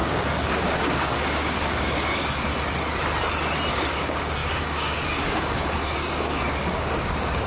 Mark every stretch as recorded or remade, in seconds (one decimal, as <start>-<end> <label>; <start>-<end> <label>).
0.0-2.5 remade; 2.5-3.7 recorded; 3.7-7.5 remade